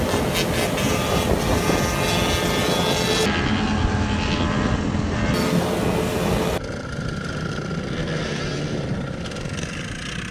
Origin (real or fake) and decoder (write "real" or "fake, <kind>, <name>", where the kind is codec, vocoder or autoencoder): real